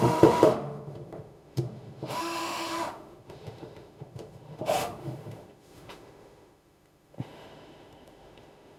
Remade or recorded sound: remade